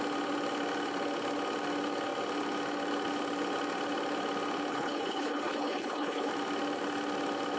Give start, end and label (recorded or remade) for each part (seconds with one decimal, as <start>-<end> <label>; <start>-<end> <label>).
0.0-4.7 recorded; 4.7-6.3 remade; 6.3-7.6 recorded